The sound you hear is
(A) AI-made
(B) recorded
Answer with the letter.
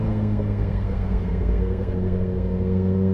A